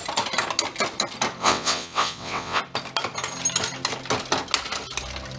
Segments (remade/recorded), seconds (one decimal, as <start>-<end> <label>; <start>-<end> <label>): 0.0-1.4 recorded; 1.4-2.6 remade; 2.6-5.4 recorded